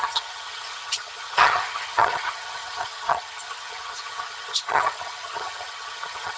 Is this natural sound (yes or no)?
no